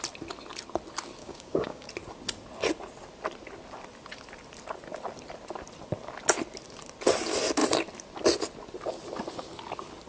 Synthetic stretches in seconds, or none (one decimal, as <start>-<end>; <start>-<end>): 1.2-1.9